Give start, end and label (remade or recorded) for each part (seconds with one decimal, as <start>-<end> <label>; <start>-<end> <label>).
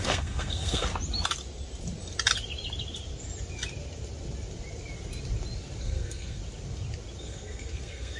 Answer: 0.0-0.9 remade; 0.9-5.8 recorded; 5.8-6.4 remade; 6.4-7.2 recorded; 7.2-8.2 remade